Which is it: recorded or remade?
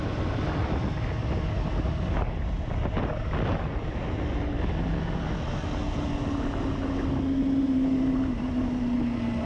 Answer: recorded